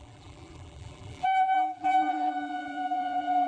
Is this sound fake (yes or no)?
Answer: yes